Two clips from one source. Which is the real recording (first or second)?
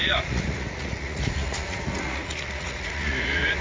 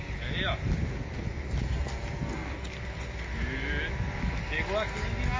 second